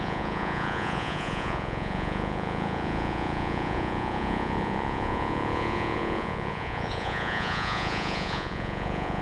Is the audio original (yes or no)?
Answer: no